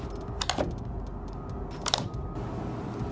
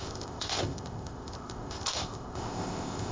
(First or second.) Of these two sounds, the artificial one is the second